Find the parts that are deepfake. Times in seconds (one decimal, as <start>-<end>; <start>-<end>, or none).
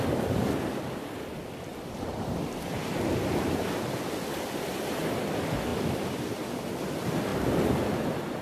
1.7-4.7